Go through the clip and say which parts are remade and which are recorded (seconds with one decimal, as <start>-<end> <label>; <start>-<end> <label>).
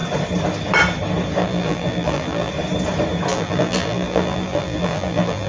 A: 0.0-1.4 recorded; 1.4-2.5 remade; 2.5-3.3 recorded; 3.3-5.5 remade